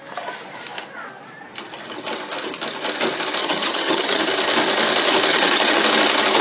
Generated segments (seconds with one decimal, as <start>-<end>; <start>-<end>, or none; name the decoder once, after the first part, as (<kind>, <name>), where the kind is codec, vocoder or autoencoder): 3.4-4.2 (vocoder, HiFi-GAN); 5.3-5.8